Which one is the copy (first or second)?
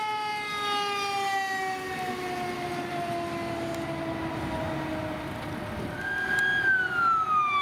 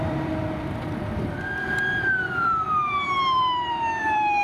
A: second